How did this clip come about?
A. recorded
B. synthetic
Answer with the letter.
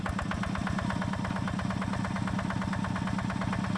A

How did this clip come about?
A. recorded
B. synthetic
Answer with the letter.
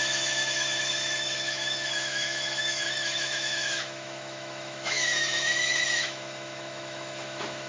B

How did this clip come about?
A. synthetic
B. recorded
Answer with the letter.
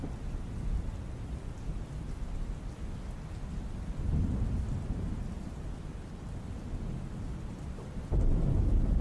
B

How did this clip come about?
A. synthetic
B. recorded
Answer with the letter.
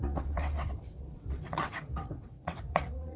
A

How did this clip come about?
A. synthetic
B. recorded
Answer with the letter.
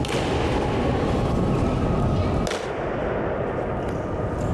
B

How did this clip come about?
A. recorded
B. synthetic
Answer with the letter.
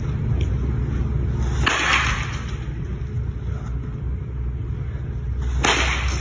A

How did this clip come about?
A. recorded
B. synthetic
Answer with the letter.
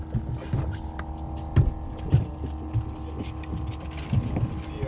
A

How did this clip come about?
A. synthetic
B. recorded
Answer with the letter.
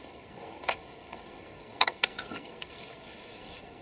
A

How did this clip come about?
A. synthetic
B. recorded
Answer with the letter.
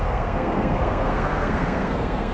A